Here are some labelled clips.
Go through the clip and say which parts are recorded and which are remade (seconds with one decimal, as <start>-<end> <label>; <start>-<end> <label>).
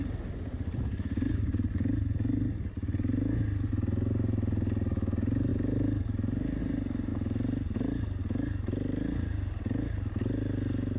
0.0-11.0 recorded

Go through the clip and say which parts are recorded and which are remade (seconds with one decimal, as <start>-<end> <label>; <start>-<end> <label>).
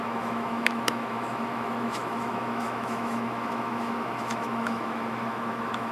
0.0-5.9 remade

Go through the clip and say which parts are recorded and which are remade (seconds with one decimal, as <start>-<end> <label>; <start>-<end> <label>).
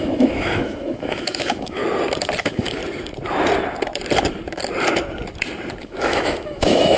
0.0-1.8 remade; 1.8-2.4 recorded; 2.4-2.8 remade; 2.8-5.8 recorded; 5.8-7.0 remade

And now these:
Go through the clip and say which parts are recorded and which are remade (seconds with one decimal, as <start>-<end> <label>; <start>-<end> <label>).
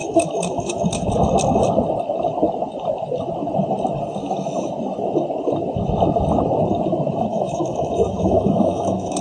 0.0-1.1 remade; 1.1-7.3 recorded; 7.3-9.2 remade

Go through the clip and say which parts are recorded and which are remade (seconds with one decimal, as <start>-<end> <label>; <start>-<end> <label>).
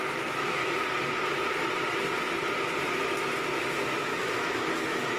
0.0-0.6 remade; 0.6-3.7 recorded; 3.7-5.2 remade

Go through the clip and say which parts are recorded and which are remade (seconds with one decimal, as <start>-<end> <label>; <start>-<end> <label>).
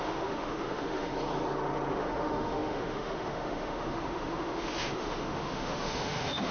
0.0-1.1 remade; 1.1-1.9 recorded; 1.9-6.5 remade